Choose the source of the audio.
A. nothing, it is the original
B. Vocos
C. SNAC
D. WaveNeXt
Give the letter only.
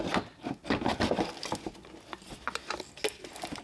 A